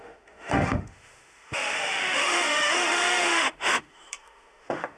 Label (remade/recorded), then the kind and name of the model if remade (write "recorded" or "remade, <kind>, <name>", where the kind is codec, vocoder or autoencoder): remade, autoencoder, DAC-VAE